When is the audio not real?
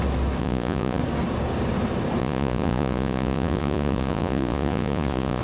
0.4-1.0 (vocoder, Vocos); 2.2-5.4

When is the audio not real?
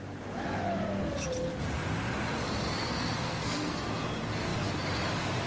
2.8-3.9 (codec, SNAC)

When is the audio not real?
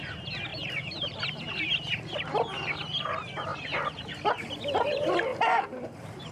0.5-1.5 (vocoder, BigVGAN v2); 3.5-4.1; 5.3-6.3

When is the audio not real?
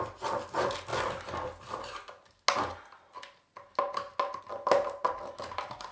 none